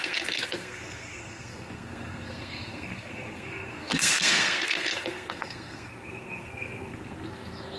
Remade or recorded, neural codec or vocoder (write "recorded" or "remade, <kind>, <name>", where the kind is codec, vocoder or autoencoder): remade, codec, SNAC